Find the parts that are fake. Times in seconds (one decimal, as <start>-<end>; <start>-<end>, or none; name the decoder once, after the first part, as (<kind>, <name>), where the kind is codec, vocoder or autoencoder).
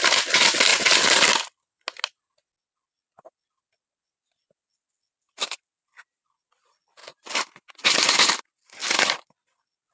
none